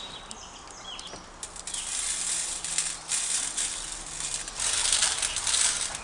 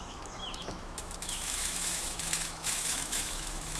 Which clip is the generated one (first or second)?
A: second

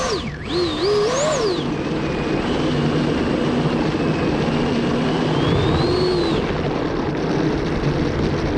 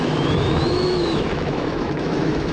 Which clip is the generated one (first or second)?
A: second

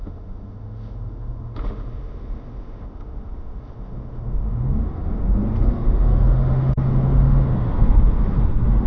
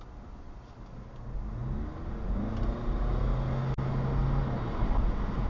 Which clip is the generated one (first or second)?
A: first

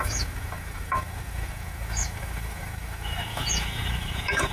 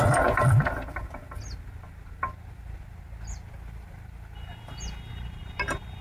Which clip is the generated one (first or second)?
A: first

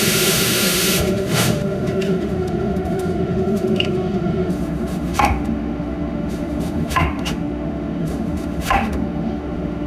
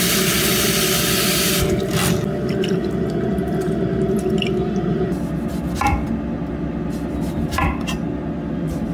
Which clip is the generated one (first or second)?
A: first